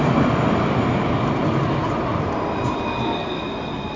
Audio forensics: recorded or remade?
recorded